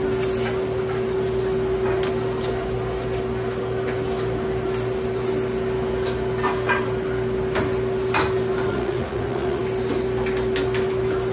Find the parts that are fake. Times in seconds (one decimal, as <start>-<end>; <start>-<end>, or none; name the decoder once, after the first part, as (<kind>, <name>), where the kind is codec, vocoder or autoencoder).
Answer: 8.7-9.6 (vocoder, Vocos)